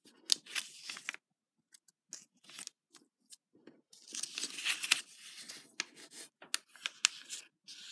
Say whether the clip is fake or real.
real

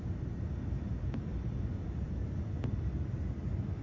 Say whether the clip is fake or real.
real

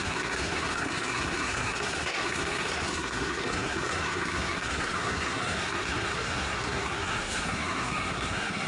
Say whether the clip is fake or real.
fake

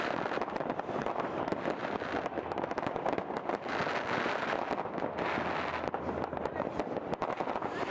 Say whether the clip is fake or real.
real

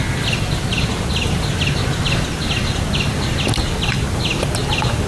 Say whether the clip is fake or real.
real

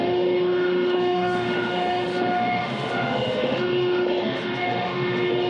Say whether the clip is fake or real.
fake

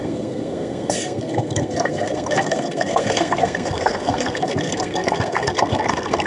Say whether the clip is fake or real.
fake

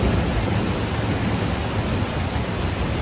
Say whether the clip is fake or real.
real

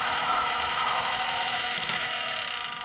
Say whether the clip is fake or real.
fake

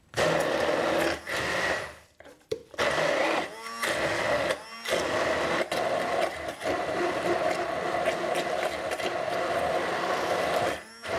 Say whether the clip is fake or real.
real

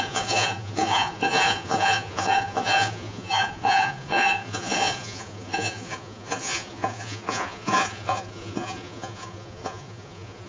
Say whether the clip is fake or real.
fake